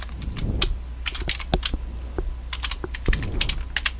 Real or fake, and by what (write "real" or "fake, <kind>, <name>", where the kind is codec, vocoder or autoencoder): real